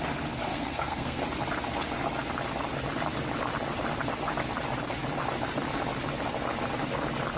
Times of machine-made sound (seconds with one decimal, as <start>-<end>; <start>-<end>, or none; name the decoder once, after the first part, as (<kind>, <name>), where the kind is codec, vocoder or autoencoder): 0.5-1.2 (codec, SNAC)